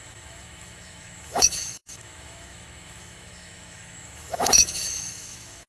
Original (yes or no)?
no